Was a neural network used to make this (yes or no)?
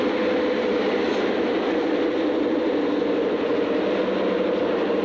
no